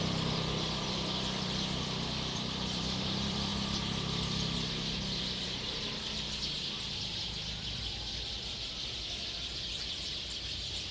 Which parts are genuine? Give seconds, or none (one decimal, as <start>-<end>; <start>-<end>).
3.5-7.8